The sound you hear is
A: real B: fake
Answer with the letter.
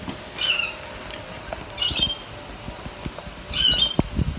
A